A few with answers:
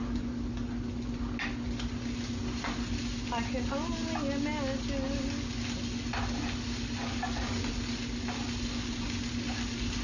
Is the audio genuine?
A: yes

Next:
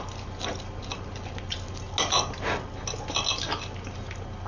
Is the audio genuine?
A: yes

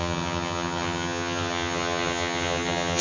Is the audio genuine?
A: no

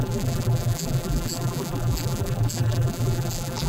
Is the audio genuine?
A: no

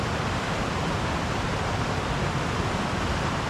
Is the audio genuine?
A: yes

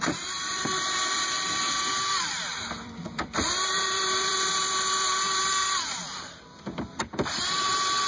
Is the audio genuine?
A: no